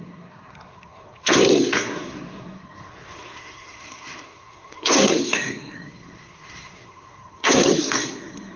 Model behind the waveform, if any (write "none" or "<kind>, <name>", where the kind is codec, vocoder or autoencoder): codec, SNAC